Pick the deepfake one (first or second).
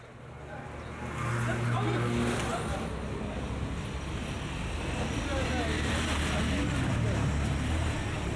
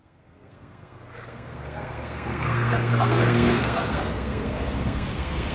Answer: second